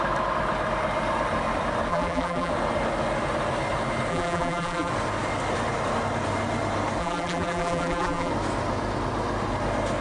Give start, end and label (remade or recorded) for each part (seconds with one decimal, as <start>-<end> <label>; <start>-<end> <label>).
0.0-1.9 recorded; 1.9-2.5 remade; 2.5-4.1 recorded; 4.1-4.9 remade; 4.9-7.0 recorded; 7.0-8.3 remade; 8.3-10.0 recorded